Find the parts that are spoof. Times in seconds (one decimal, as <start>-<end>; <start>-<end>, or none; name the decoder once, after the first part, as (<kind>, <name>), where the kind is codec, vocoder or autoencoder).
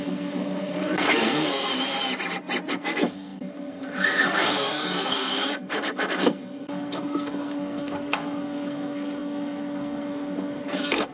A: 0.0-1.7 (codec, SNAC); 2.7-11.1